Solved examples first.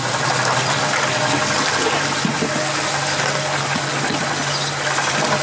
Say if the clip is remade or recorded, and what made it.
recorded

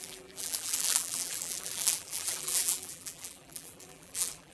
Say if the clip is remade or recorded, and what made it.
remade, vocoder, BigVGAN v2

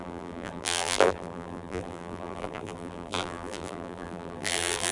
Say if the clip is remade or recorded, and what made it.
remade, vocoder, BigVGAN v2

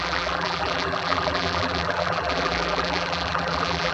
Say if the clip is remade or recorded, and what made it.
remade, vocoder, BigVGAN v2